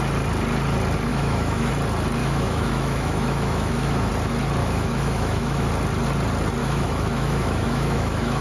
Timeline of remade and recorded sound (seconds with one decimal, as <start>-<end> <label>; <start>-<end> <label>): 0.0-1.1 recorded; 1.1-1.7 remade; 1.7-2.2 recorded; 2.2-4.1 remade; 4.1-4.6 recorded; 4.6-5.7 remade; 5.7-6.6 recorded; 6.6-8.4 remade